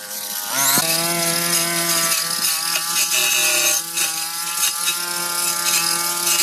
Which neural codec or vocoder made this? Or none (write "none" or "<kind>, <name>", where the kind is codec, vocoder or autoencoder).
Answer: none